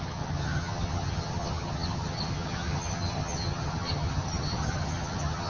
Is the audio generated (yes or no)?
yes